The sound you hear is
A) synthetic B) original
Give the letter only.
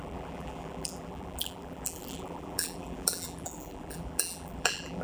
A